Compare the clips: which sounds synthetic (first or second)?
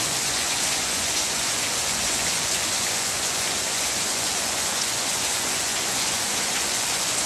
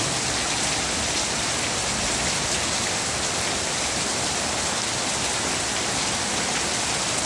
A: first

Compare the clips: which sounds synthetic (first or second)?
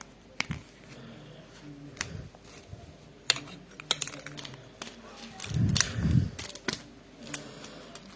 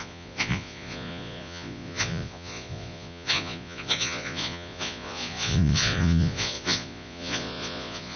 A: second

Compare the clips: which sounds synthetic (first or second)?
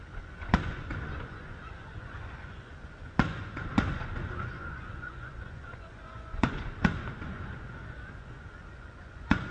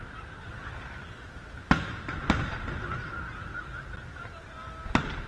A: first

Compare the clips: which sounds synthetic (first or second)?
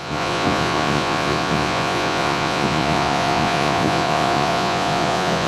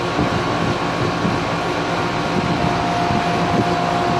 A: first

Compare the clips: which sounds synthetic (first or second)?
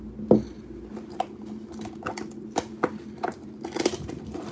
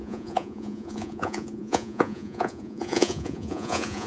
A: second